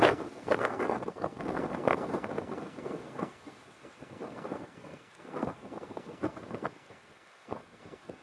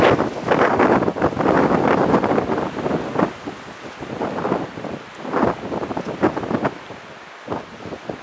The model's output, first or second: first